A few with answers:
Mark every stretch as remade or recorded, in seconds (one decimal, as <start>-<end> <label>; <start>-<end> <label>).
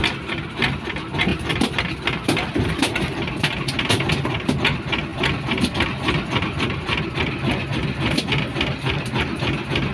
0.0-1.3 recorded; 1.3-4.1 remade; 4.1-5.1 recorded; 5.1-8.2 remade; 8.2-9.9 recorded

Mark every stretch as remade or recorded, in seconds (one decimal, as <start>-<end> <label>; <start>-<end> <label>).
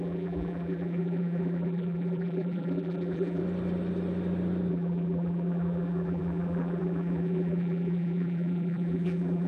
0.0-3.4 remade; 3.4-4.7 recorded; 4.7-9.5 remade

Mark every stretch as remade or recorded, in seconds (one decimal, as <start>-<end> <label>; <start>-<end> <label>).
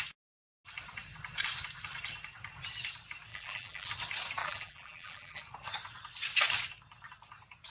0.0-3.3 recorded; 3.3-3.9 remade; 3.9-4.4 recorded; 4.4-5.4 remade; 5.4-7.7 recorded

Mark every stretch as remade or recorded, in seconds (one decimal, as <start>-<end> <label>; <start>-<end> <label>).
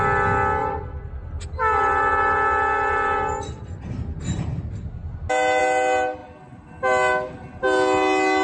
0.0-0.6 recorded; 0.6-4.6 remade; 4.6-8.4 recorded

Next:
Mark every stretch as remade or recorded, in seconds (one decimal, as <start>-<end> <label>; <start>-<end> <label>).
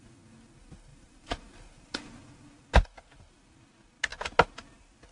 0.0-0.9 recorded; 0.9-3.2 remade; 3.2-5.1 recorded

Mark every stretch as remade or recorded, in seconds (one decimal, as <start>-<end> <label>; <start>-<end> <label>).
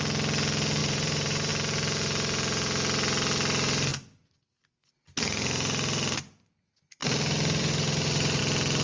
0.0-0.8 recorded; 0.8-1.5 remade; 1.5-7.0 recorded; 7.0-8.4 remade; 8.4-8.8 recorded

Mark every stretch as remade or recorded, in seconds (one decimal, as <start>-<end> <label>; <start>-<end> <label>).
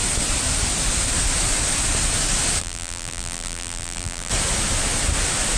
0.0-2.6 recorded; 2.6-4.3 remade; 4.3-5.6 recorded